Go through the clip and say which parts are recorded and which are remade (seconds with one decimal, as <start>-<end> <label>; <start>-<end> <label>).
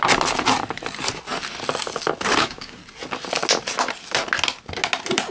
0.0-2.4 recorded; 2.4-2.8 remade; 2.8-5.3 recorded